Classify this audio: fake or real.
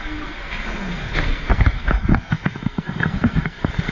fake